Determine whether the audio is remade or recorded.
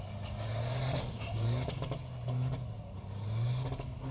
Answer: recorded